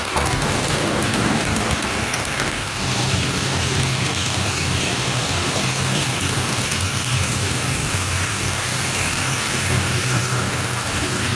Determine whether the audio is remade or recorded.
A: remade